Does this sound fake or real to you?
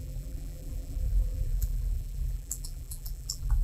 fake